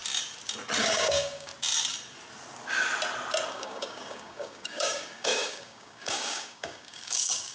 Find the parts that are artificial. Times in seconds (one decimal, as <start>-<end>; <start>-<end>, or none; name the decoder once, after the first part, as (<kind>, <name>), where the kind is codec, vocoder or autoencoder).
0.8-1.5 (codec, DAC); 3.5-7.5